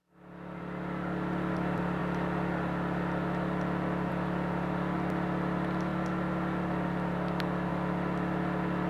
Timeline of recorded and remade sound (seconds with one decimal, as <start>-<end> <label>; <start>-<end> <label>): 0.0-8.9 recorded